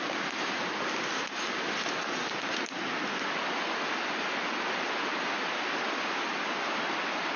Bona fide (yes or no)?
yes